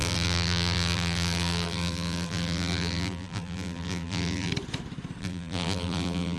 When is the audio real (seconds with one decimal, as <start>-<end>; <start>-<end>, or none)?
4.5-5.2